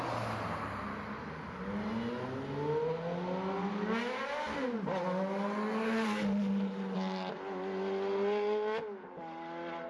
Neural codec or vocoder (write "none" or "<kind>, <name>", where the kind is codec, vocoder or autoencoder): none